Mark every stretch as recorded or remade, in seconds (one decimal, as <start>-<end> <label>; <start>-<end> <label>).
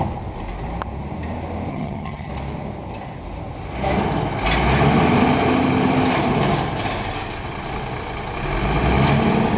0.0-1.7 recorded; 1.7-2.3 remade; 2.3-9.6 recorded